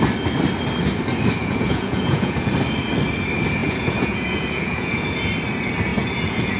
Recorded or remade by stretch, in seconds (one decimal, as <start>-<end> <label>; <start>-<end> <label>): 0.0-1.4 recorded; 1.4-2.5 remade; 2.5-3.6 recorded; 3.6-5.3 remade; 5.3-5.9 recorded; 5.9-6.6 remade